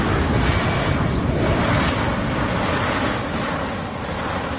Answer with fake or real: real